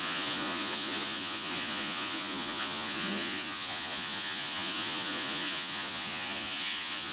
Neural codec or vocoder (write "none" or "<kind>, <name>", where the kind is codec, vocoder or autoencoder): vocoder, Vocos